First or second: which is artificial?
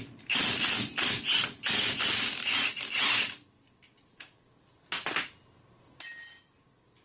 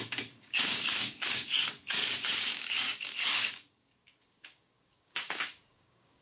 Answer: second